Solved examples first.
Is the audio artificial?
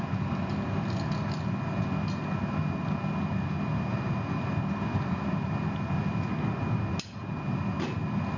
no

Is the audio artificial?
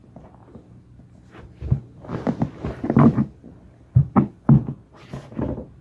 no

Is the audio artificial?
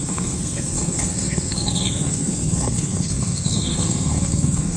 yes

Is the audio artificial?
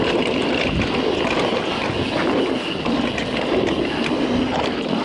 no